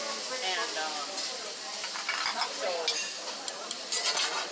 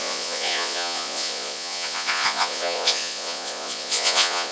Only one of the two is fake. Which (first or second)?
second